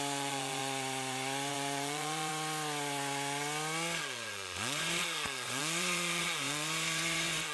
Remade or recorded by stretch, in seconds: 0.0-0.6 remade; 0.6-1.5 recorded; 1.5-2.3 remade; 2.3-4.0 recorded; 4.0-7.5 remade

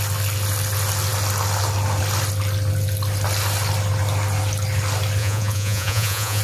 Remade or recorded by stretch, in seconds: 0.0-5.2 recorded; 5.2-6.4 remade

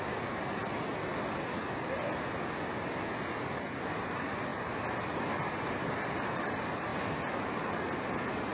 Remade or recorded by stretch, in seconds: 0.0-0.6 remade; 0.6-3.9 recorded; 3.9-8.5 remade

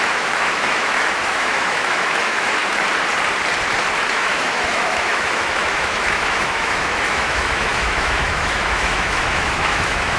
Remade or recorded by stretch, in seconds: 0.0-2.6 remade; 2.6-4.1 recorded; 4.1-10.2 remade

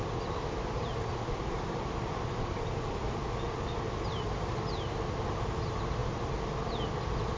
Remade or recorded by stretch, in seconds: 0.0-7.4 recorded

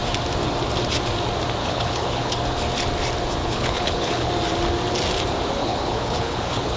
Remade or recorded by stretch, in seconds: 0.0-1.6 recorded; 1.6-2.3 remade; 2.3-3.4 recorded; 3.4-4.3 remade; 4.3-5.6 recorded; 5.6-6.8 remade